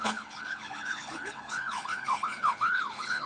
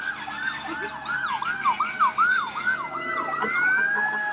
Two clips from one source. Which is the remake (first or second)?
first